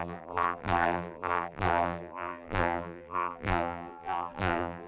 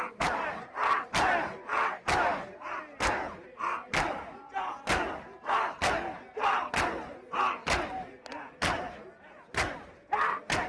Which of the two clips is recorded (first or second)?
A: second